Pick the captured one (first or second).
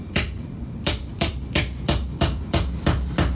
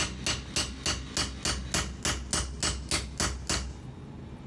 second